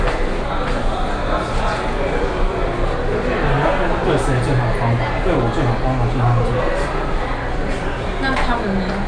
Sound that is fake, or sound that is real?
real